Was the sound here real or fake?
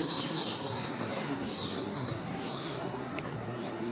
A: fake